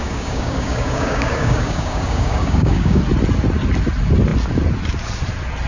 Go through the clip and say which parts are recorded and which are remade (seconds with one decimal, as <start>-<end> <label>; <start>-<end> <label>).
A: 0.0-3.0 remade; 3.0-5.7 recorded